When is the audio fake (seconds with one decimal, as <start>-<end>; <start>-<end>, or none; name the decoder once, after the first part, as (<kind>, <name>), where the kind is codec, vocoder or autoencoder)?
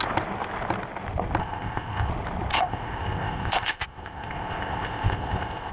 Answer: 1.4-2.1 (codec, ZipCodec); 2.5-5.7